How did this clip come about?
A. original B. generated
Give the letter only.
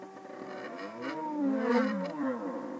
B